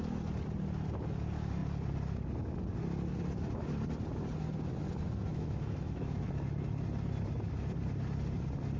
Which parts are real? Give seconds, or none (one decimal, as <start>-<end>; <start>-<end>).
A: 0.0-5.3; 6.1-8.8